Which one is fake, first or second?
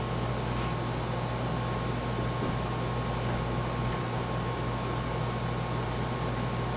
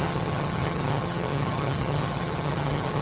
second